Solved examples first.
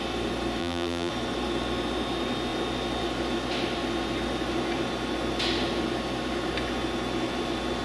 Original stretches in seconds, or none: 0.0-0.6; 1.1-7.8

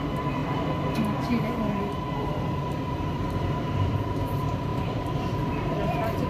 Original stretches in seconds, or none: none

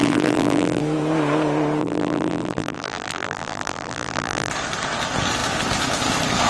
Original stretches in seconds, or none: 0.8-1.8; 4.5-6.5